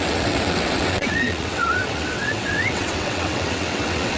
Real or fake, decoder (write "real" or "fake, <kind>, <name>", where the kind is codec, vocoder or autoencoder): fake, vocoder, WaveNeXt